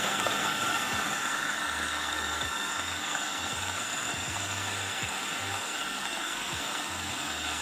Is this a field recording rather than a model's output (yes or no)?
no